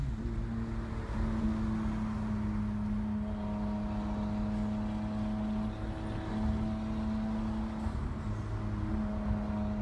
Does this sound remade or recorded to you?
recorded